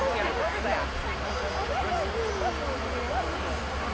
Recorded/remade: recorded